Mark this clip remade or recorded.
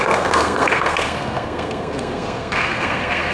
remade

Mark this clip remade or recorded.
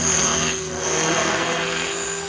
remade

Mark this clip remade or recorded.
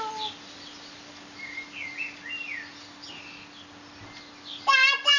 recorded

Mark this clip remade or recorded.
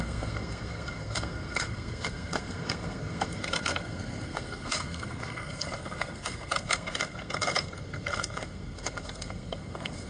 remade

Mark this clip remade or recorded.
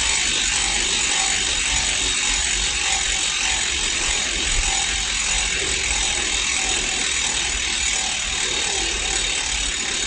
recorded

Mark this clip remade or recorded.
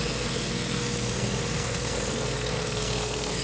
remade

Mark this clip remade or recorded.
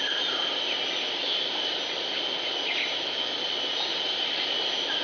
recorded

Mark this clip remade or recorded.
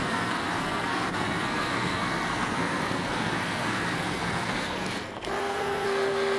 remade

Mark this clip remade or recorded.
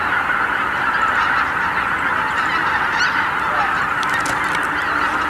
recorded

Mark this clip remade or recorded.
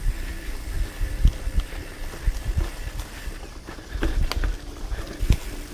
recorded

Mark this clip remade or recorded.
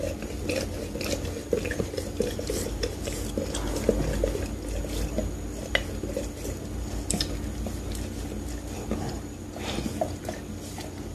recorded